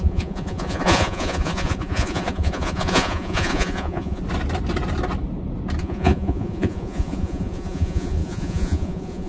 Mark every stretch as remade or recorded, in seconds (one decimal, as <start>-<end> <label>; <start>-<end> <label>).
0.0-4.2 remade; 4.2-5.8 recorded; 5.8-9.3 remade